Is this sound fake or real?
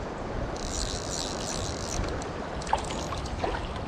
real